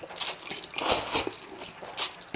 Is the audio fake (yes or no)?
no